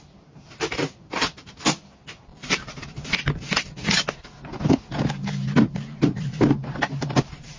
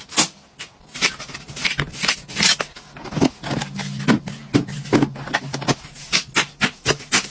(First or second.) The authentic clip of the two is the second